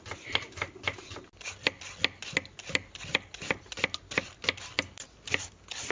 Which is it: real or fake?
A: real